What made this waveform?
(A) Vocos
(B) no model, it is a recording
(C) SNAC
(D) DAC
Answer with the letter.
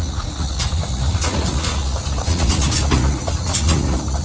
A